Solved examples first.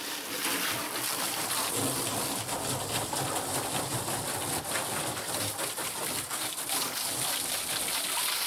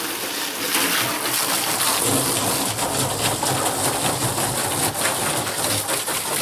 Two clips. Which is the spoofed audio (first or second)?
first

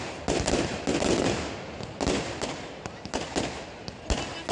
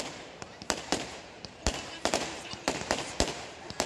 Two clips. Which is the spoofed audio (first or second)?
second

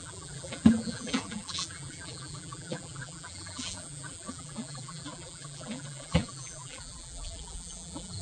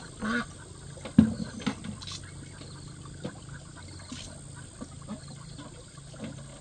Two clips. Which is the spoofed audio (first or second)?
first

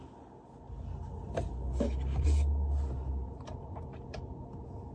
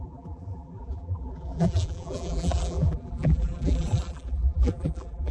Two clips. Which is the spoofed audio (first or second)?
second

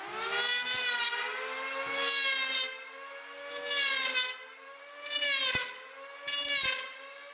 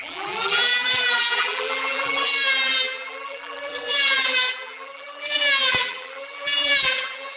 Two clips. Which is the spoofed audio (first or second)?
second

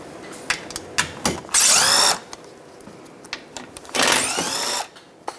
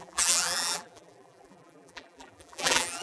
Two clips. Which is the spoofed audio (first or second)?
second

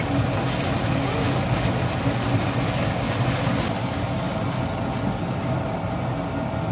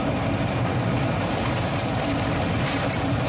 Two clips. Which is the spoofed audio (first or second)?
second